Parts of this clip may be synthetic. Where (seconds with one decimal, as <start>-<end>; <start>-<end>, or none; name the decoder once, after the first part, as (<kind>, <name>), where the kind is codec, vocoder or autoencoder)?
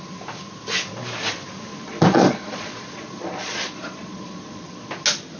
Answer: 1.7-4.9 (vocoder, Vocos)